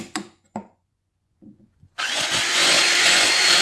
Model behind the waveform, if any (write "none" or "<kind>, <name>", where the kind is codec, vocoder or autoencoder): vocoder, Vocos